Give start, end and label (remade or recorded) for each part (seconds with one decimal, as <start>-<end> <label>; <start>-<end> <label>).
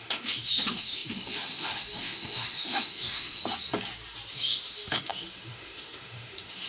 0.0-3.4 remade; 3.4-4.3 recorded; 4.3-6.7 remade